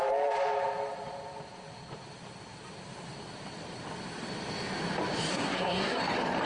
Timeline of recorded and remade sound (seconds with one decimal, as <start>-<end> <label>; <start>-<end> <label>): 0.0-5.3 recorded; 5.3-6.0 remade; 6.0-6.5 recorded